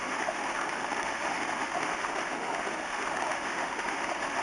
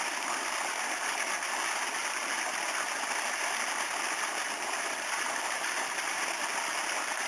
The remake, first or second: first